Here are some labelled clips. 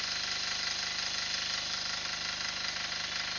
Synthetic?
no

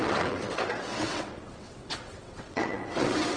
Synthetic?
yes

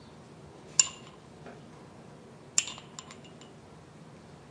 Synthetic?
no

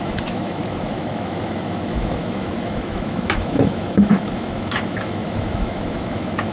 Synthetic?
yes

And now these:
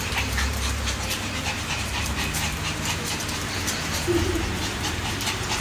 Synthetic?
yes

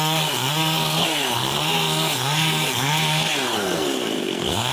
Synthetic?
yes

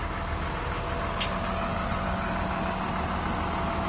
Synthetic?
no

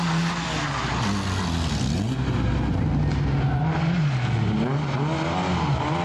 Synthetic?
no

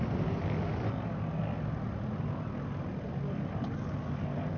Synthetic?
no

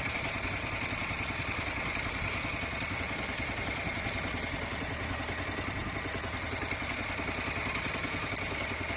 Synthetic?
no